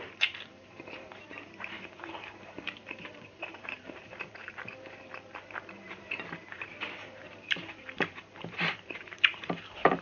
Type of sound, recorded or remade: remade